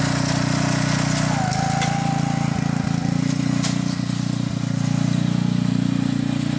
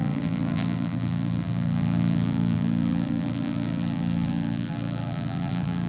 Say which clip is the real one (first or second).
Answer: first